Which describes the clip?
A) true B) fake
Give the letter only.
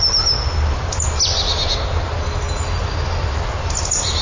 A